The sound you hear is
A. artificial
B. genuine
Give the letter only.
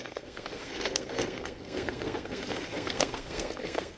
A